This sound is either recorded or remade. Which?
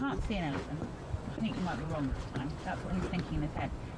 remade